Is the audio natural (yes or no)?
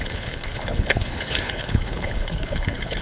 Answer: no